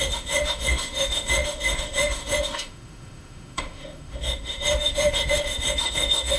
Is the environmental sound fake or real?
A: fake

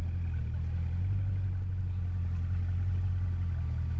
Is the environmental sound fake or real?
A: real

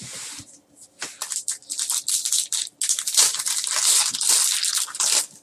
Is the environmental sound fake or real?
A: real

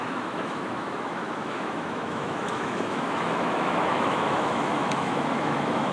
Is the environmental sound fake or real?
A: fake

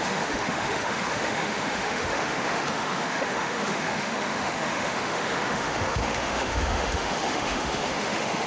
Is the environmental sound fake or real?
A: fake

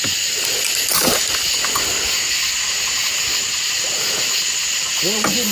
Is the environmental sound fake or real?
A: real